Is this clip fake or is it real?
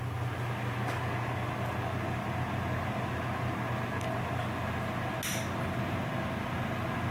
real